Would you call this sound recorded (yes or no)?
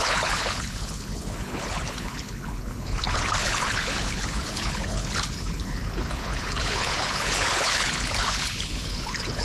no